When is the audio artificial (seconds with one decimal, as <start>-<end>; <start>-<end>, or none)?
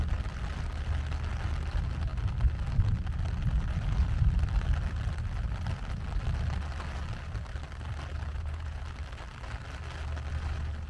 8.3-8.8